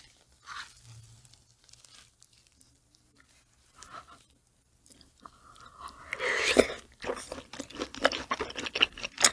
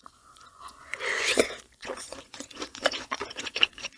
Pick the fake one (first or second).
second